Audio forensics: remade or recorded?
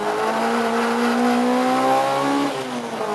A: recorded